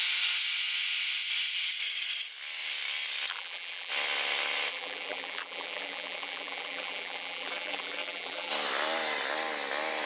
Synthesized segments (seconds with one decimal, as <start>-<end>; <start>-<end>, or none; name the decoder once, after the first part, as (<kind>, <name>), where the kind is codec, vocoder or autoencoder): 3.3-3.9 (vocoder, BigVGAN v2); 4.7-8.5